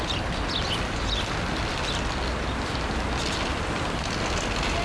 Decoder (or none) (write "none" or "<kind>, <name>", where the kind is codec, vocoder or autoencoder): none